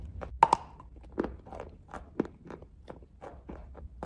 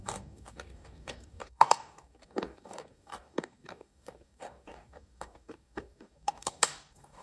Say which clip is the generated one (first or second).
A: second